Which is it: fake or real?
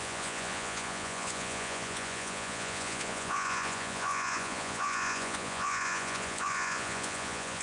fake